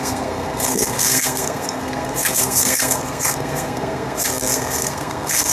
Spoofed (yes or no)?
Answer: yes